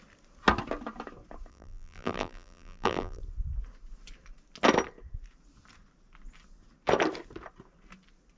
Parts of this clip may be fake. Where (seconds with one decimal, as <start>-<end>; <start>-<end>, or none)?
1.5-3.2